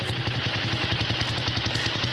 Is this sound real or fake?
real